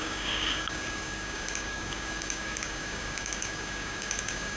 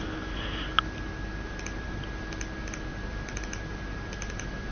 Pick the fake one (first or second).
first